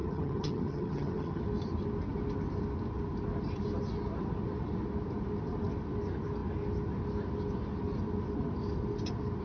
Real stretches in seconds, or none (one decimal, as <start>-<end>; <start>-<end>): 1.4-9.4